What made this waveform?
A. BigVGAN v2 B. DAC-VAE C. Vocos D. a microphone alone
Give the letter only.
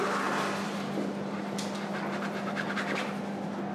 D